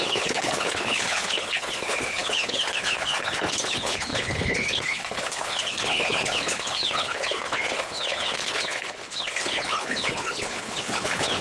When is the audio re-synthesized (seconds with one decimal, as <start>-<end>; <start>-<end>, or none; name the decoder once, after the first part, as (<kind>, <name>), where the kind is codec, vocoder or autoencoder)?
0.0-11.4 (codec, HILCodec)